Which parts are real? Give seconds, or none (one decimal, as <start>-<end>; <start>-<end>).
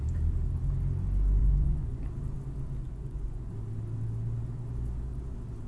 0.0-1.4; 2.0-2.8; 3.5-5.7